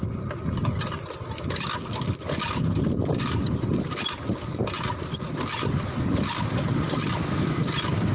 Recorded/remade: recorded